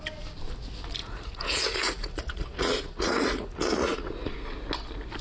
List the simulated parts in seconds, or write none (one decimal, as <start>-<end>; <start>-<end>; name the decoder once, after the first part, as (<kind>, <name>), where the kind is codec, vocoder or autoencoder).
1.0-4.1 (vocoder, Vocos)